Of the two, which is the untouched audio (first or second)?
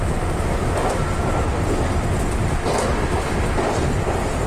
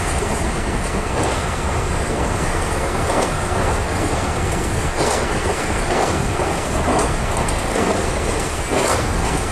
first